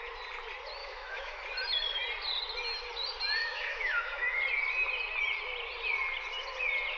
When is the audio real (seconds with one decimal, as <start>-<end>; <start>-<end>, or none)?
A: 0.0-0.8; 1.4-3.4; 4.4-7.0